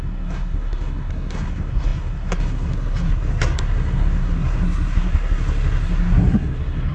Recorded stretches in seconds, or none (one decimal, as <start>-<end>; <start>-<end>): none